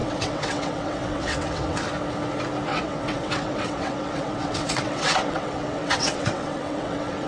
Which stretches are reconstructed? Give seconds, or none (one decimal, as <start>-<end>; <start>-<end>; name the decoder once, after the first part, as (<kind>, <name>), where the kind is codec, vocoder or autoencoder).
0.0-1.8 (vocoder, WaveNeXt); 2.7-7.3